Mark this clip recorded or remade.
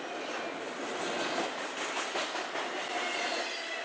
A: recorded